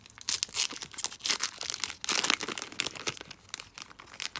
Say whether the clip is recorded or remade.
recorded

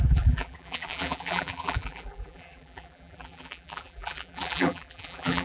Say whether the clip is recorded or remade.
remade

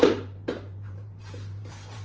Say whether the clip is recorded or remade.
remade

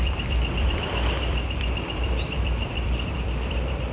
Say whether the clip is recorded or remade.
remade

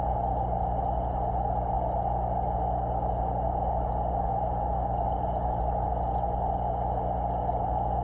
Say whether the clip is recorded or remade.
recorded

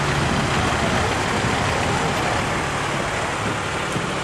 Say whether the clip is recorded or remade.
recorded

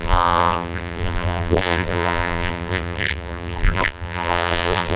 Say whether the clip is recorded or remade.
remade